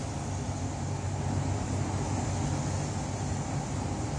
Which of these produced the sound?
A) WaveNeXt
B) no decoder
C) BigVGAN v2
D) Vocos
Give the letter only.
B